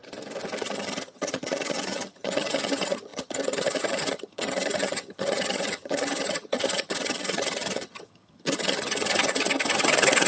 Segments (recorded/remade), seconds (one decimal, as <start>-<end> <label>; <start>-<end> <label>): 0.0-0.6 recorded; 0.6-10.3 remade